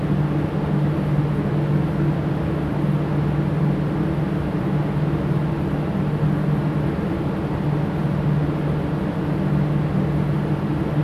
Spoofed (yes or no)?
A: no